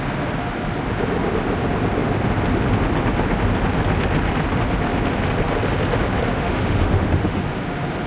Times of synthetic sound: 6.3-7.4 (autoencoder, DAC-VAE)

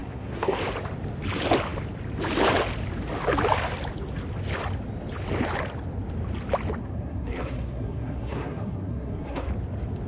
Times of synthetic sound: 0.0-0.6 (codec, SNAC); 6.8-9.5

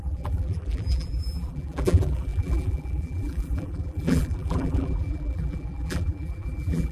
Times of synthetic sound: 0.0-6.9 (vocoder, BigVGAN v2)

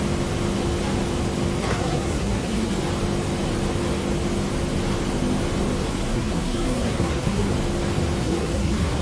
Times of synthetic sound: 1.6-2.8 (codec, SNAC); 5.9-7.5; 8.2-9.0

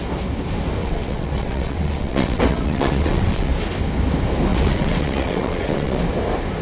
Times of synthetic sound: 0.8-3.5 (vocoder, WaveNeXt); 4.5-6.0

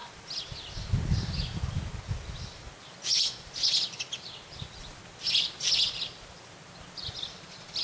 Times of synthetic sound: none

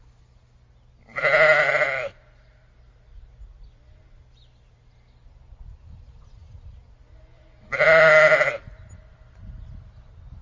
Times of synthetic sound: none

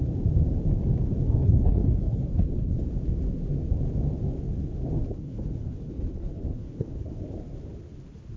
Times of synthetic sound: 1.4-2.8 (codec, HILCodec); 5.1-7.2